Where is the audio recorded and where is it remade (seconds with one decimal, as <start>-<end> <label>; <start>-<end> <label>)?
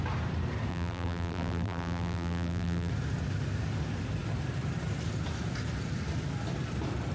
0.0-0.7 recorded; 0.7-2.9 remade; 2.9-7.1 recorded